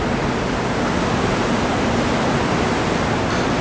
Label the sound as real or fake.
real